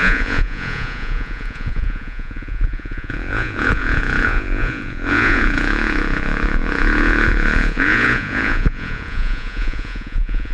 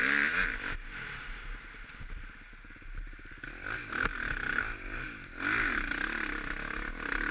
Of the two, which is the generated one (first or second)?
first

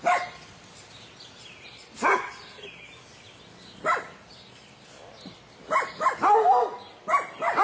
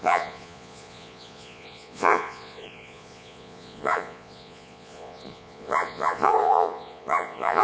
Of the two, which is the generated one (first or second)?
second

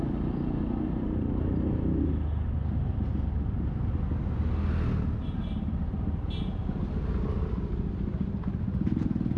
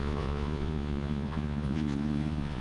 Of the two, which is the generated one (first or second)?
second